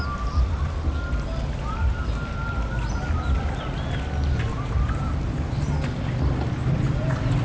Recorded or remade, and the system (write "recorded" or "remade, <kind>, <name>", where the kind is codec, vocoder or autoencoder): recorded